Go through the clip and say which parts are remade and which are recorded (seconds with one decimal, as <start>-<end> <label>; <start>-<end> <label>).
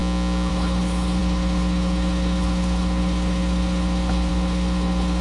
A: 0.0-0.5 recorded; 0.5-5.2 remade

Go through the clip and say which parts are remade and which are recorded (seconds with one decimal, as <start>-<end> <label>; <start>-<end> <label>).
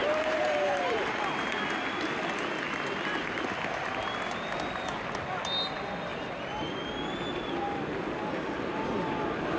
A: 0.0-1.6 remade; 1.6-9.6 recorded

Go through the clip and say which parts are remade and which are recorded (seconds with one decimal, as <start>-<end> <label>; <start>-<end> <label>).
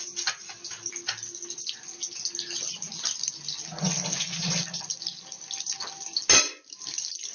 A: 0.0-7.3 recorded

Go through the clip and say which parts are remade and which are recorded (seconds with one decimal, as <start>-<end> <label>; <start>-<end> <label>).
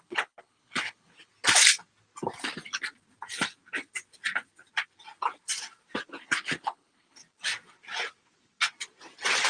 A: 0.0-1.3 remade; 1.3-6.1 recorded; 6.1-7.2 remade; 7.2-9.5 recorded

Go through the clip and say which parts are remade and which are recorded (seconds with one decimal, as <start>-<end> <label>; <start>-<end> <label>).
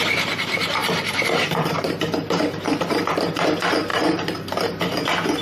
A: 0.0-5.4 remade